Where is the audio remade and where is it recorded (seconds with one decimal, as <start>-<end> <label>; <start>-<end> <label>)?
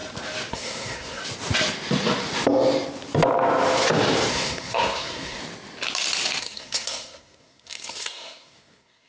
0.0-0.5 recorded; 0.5-1.2 remade; 1.2-4.3 recorded; 4.3-5.4 remade; 5.4-6.4 recorded; 6.4-9.1 remade